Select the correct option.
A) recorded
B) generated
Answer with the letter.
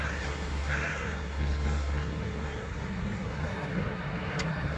B